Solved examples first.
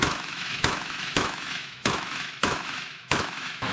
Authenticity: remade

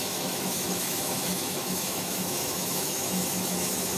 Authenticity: remade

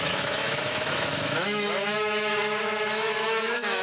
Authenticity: remade